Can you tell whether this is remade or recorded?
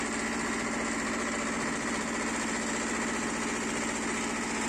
recorded